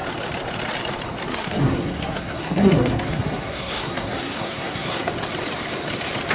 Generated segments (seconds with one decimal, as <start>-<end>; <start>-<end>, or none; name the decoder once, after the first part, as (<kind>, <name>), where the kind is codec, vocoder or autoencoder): 1.3-5.1 (codec, SNAC)